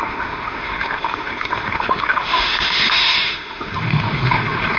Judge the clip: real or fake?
fake